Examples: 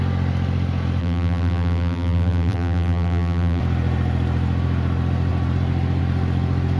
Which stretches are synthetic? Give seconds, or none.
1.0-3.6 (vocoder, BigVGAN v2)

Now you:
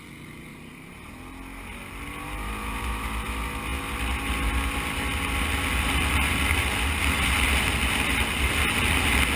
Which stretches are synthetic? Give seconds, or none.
0.5-1.1 (vocoder, BigVGAN v2)